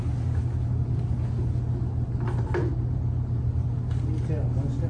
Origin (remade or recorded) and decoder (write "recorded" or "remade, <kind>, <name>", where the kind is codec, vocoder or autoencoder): recorded